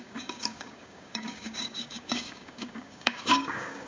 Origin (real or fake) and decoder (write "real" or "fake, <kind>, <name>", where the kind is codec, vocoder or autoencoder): fake, codec, DAC